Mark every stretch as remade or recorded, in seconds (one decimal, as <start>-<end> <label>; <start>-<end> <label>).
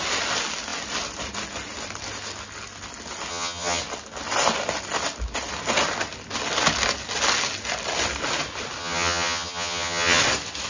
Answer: 0.0-3.3 recorded; 3.3-3.8 remade; 3.8-8.8 recorded; 8.8-10.2 remade; 10.2-10.7 recorded